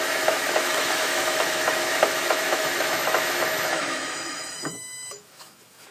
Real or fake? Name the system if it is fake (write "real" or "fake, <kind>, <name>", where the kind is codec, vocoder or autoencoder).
fake, autoencoder, DAC-VAE